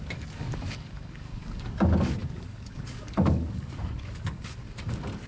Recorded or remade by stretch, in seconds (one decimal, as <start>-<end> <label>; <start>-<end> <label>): 0.0-5.3 remade